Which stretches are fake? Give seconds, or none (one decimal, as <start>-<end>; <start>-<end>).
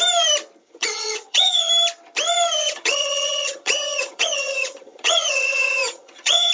0.6-1.7; 2.6-6.5